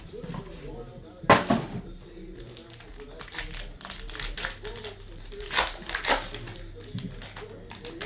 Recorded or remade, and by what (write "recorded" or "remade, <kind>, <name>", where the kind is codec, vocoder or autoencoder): recorded